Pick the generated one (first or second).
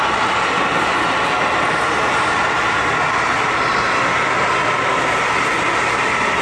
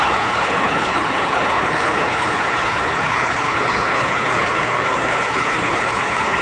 second